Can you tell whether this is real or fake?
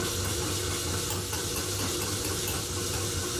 real